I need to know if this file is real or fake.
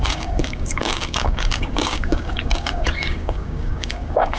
fake